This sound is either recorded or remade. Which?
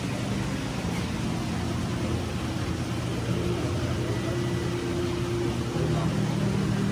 recorded